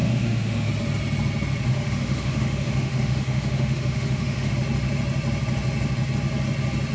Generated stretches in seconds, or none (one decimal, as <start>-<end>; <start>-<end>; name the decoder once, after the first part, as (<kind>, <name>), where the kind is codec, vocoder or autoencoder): 0.0-0.7 (autoencoder, DAC-VAE); 1.7-4.5